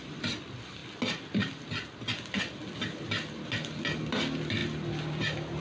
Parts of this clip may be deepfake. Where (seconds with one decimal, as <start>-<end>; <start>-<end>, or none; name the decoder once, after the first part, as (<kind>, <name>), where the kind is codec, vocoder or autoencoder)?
none

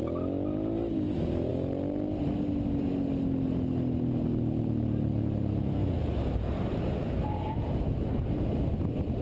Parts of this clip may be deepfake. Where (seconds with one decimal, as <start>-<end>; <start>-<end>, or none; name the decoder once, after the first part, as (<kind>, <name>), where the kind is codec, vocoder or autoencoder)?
none